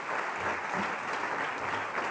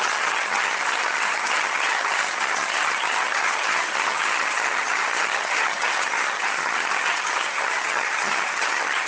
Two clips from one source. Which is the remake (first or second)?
second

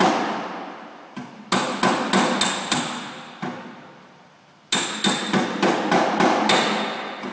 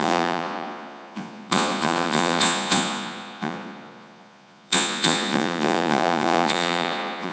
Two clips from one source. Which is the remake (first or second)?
second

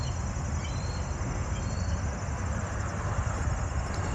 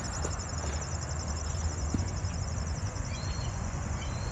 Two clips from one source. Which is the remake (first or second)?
second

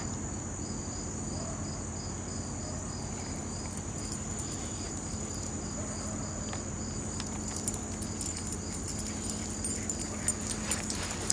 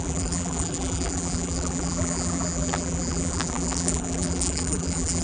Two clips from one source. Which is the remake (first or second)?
second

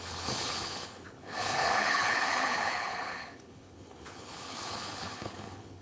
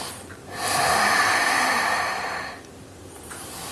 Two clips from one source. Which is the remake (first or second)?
first